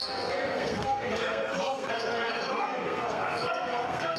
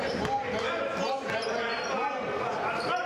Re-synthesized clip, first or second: first